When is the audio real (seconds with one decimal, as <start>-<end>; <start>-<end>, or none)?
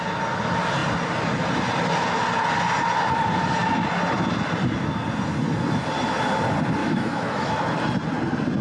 0.0-6.8; 7.5-8.6